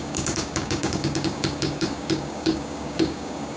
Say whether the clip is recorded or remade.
remade